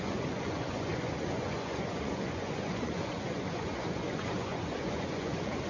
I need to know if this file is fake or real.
fake